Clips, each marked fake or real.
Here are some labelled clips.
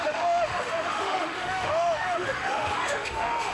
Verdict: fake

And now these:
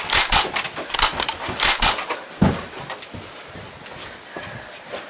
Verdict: real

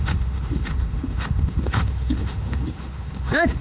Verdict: fake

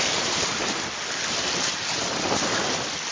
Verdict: real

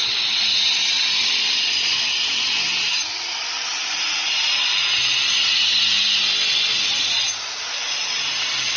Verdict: real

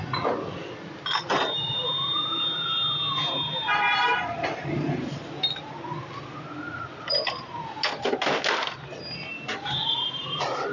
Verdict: real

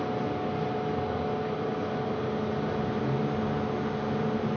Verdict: real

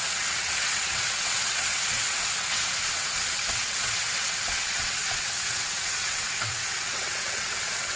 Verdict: fake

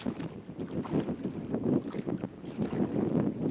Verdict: real